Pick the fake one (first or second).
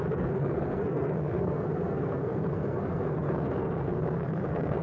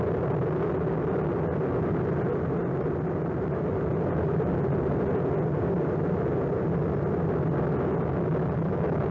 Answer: first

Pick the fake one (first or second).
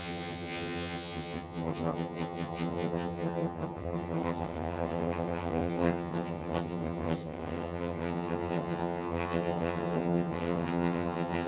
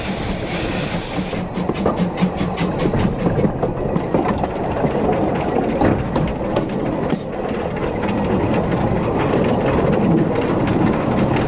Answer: first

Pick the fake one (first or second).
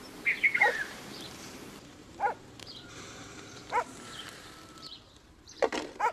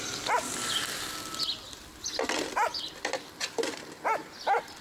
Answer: first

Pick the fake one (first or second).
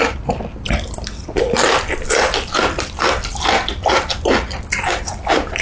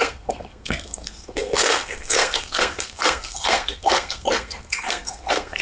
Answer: second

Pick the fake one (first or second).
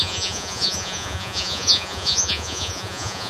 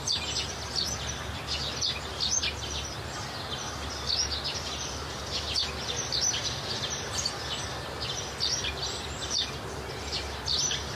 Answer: first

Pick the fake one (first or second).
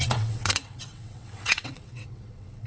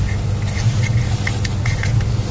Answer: first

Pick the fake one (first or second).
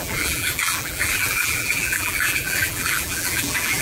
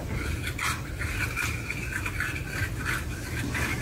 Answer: first